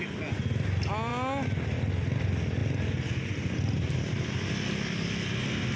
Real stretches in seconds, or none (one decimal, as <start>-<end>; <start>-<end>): 0.0-5.8